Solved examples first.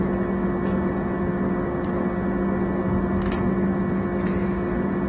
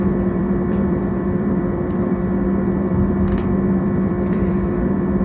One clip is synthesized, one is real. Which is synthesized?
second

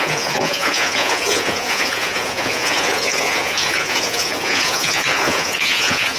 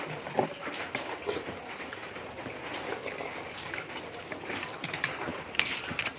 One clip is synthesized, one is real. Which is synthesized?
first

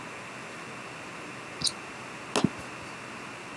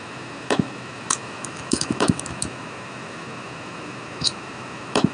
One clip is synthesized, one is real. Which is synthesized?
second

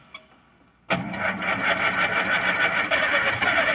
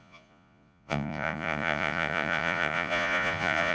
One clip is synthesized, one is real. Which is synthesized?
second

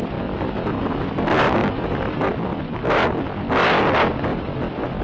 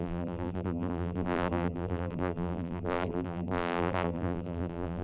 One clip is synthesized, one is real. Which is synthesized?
second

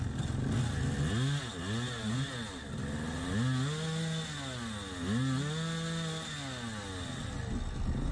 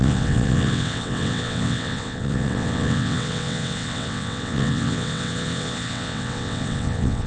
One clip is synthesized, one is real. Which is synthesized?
second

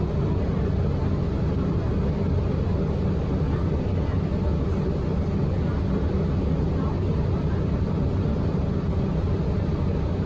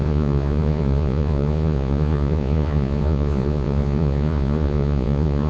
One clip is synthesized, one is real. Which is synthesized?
second